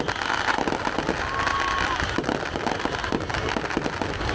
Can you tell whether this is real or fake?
real